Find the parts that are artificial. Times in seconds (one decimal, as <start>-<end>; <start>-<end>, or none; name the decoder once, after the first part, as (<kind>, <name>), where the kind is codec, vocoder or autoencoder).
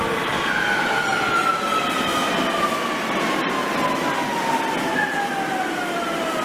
none